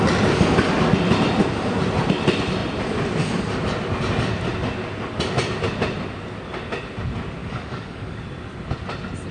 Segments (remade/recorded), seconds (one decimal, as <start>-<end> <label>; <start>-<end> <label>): 0.0-7.4 recorded; 7.4-8.2 remade; 8.2-9.3 recorded